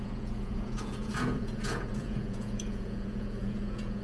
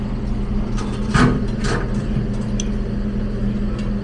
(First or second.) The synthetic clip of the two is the first